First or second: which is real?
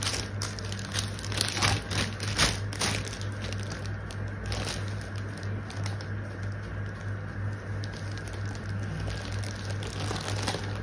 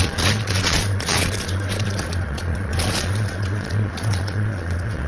first